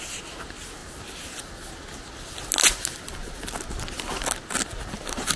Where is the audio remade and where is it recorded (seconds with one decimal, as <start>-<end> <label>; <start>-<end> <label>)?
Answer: 0.0-5.4 recorded